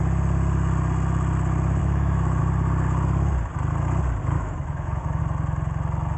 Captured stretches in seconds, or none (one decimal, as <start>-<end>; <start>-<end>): 0.0-1.8; 2.4-4.2; 5.2-6.2